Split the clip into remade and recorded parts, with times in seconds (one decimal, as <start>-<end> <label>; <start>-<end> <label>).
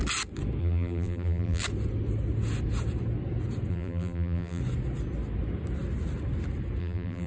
0.0-0.6 recorded; 0.6-1.6 remade; 1.6-3.7 recorded; 3.7-4.6 remade; 4.6-6.8 recorded; 6.8-7.3 remade